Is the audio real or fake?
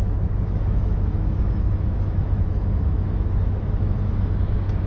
fake